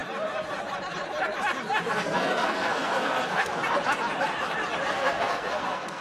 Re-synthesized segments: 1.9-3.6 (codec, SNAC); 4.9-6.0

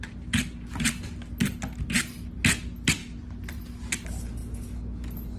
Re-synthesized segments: none